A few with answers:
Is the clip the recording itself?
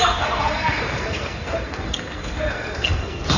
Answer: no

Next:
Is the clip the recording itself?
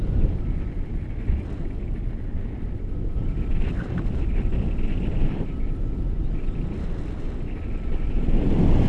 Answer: yes